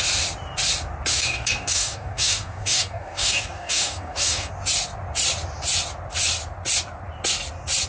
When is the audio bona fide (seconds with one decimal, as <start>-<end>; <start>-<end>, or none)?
0.0-1.1; 4.5-7.9